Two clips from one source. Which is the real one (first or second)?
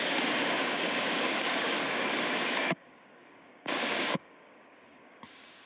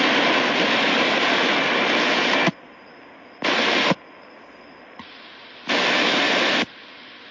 second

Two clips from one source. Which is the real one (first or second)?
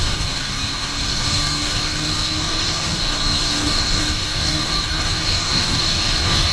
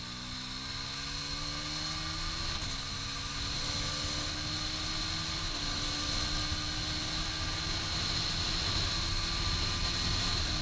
second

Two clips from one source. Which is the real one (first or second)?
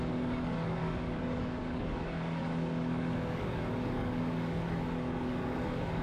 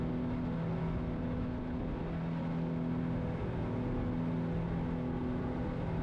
second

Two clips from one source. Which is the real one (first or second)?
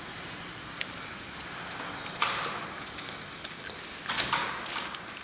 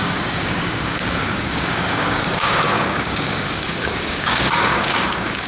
first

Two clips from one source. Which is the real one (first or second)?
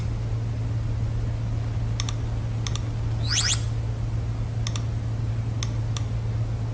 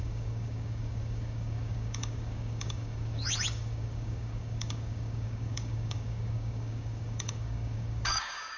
first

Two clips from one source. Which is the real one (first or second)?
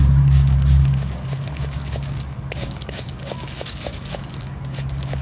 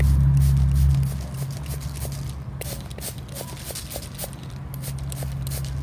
second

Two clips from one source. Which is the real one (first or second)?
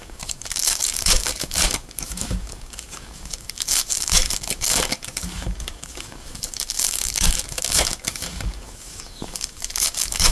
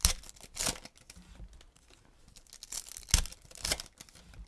second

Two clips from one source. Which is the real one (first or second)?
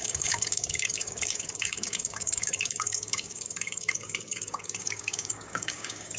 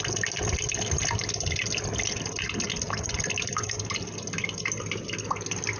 second